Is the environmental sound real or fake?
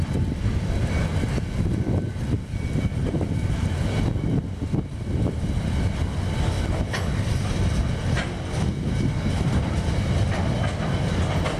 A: real